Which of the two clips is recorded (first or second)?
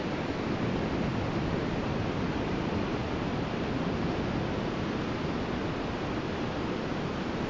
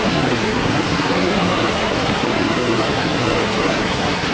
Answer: first